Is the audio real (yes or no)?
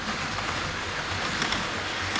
yes